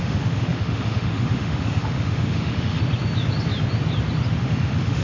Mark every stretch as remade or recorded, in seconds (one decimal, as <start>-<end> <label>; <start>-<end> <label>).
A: 0.0-2.8 remade; 2.8-4.4 recorded; 4.4-5.0 remade